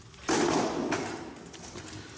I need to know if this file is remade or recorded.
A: recorded